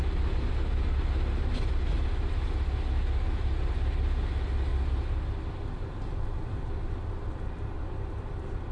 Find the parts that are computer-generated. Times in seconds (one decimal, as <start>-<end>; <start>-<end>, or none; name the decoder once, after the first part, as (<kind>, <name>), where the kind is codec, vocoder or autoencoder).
none